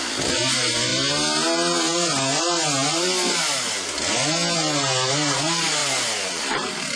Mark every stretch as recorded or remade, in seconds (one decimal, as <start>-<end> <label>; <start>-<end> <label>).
0.0-5.8 recorded; 5.8-6.4 remade; 6.4-7.0 recorded